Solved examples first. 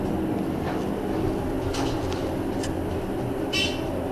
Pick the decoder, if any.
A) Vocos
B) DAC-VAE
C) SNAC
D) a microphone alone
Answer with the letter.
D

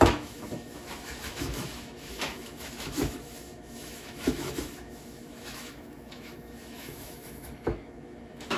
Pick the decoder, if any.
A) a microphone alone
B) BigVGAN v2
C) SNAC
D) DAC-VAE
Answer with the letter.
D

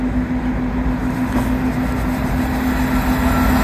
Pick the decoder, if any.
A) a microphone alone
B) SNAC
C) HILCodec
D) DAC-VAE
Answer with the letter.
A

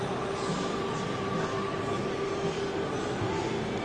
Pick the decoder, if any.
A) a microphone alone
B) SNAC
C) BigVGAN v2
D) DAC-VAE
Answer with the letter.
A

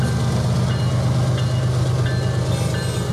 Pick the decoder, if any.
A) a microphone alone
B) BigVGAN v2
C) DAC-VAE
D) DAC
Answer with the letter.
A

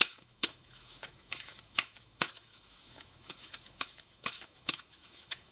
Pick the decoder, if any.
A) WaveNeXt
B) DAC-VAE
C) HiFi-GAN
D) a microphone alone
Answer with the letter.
B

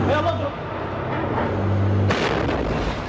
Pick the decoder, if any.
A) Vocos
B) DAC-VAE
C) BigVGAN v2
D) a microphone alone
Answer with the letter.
D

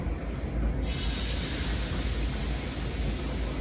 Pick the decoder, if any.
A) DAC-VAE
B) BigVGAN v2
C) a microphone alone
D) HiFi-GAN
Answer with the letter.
C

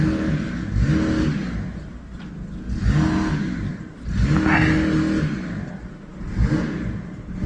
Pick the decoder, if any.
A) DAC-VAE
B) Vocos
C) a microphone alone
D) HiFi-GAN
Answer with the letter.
C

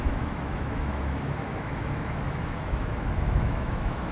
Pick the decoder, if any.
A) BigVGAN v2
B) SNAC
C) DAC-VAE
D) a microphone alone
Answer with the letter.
C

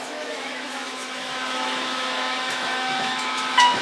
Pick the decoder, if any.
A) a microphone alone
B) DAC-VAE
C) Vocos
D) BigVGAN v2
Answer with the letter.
B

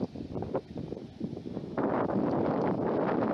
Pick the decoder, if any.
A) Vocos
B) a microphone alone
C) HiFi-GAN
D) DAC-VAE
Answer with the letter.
B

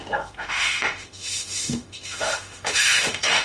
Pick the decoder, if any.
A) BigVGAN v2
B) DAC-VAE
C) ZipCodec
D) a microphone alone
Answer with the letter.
B